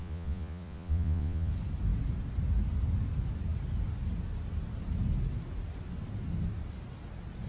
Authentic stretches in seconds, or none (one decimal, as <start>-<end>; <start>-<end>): 1.5-7.5

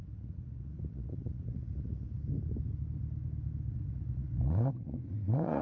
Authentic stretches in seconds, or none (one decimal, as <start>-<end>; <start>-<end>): 2.2-3.7

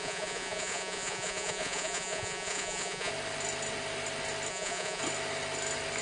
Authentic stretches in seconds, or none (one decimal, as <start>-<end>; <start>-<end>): 3.1-4.5; 5.0-6.0

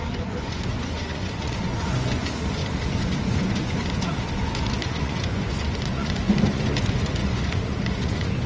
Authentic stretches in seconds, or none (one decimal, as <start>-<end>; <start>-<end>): none

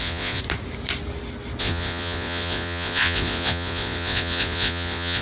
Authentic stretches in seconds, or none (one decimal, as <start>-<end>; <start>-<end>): 0.4-1.6